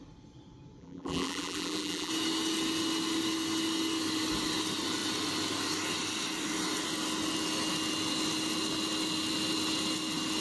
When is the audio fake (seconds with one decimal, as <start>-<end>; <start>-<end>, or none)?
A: 0.8-2.1

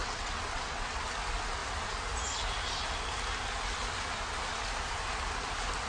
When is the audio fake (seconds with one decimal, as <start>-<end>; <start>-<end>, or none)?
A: 0.0-1.0

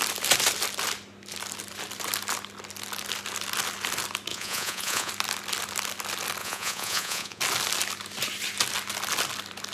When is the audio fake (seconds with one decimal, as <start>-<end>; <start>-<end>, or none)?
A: 4.3-5.1; 6.4-7.4

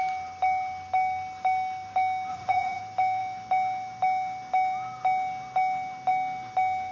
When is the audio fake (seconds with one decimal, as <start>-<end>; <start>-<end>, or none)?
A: 2.3-2.8

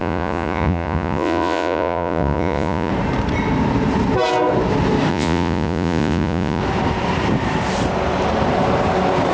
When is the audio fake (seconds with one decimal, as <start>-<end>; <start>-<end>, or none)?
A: 0.0-2.9; 5.1-6.6

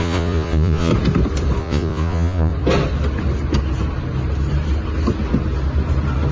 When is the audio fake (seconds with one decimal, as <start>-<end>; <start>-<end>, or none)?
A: 0.0-0.9; 1.6-2.5

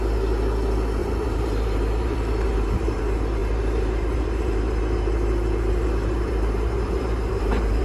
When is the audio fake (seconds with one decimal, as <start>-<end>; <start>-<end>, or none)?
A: 1.0-3.0; 3.4-7.8